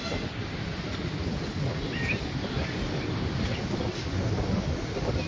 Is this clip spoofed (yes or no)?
no